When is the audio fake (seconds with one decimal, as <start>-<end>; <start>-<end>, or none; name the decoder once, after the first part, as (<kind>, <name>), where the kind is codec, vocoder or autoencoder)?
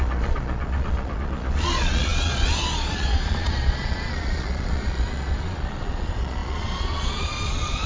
0.0-7.9 (vocoder, Vocos)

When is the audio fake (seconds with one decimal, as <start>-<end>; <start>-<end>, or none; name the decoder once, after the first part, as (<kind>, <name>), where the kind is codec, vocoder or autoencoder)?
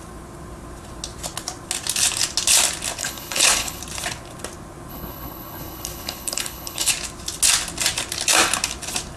3.0-3.8 (codec, HILCodec); 4.9-6.9